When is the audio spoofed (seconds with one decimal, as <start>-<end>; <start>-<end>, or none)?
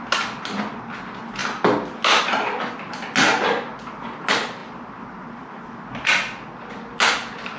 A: none